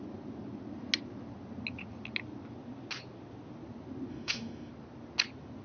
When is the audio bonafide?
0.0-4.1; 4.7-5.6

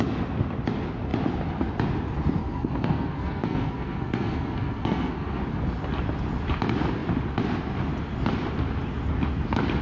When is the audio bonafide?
0.0-2.4; 5.4-9.8

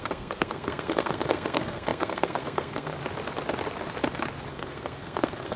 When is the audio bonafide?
3.0-4.5

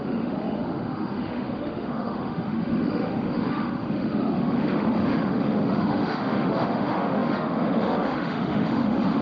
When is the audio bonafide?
none